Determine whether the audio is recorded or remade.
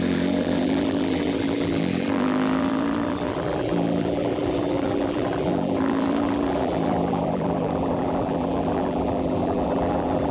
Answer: remade